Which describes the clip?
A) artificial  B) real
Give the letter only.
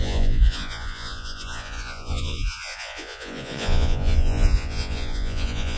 A